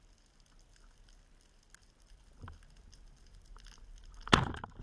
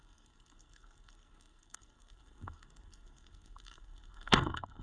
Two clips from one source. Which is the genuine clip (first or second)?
first